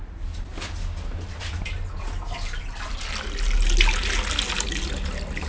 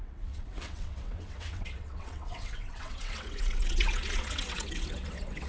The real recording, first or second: first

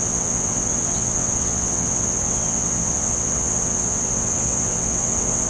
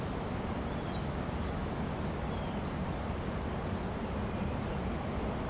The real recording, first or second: second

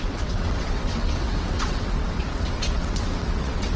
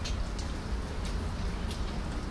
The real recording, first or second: second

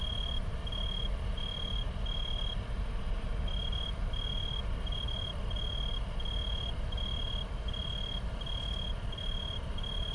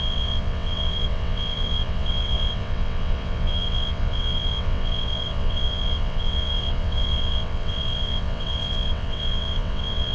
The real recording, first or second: first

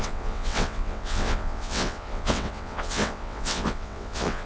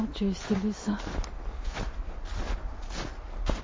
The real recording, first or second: second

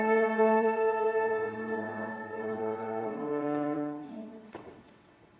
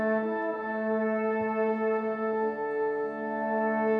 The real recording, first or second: second